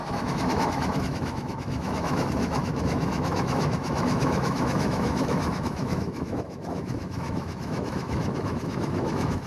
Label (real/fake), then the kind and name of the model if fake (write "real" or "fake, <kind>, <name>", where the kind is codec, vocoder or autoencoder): fake, autoencoder, DAC-VAE